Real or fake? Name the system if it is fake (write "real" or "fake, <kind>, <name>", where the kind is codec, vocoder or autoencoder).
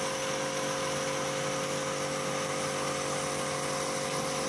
real